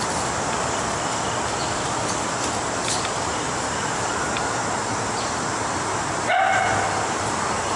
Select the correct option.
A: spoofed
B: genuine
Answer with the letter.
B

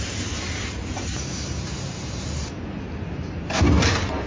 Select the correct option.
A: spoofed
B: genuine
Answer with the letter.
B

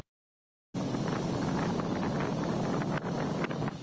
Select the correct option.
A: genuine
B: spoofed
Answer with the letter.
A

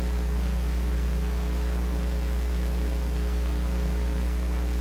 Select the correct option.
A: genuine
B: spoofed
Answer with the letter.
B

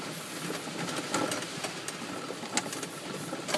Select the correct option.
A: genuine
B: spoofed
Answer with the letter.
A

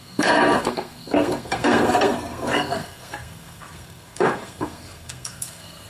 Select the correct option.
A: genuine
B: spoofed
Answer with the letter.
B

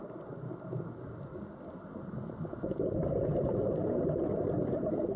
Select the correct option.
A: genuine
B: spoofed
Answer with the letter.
A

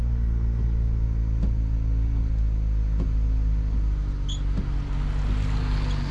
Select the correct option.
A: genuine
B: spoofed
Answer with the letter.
A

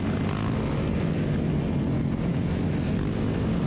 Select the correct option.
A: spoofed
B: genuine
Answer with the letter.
B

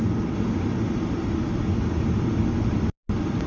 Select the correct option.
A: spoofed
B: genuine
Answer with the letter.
B